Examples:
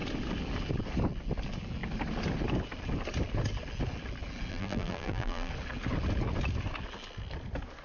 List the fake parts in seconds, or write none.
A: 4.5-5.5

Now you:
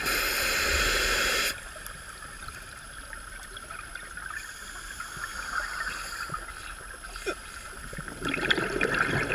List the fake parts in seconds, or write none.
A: 2.4-2.9

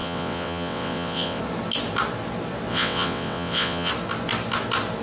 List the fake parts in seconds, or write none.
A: 0.0-1.4; 2.7-3.9

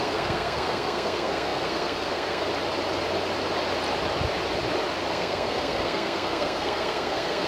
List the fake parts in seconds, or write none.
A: 0.0-2.5; 5.1-7.5

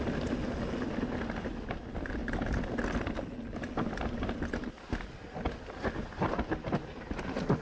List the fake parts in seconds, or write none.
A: none

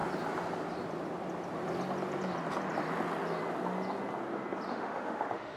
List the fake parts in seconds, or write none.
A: 4.7-5.6